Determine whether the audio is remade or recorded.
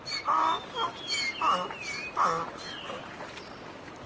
recorded